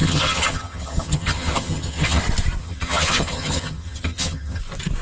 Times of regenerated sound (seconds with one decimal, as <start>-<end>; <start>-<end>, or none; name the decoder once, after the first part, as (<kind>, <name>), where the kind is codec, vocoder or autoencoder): 0.0-2.2 (vocoder, HiFi-GAN); 2.6-4.6